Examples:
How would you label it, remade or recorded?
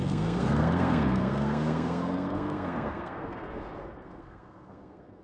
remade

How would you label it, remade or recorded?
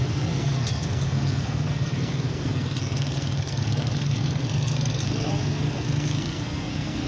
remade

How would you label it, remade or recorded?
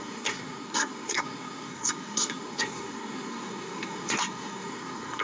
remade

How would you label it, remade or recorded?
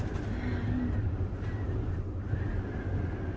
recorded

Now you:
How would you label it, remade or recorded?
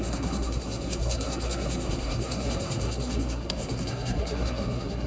remade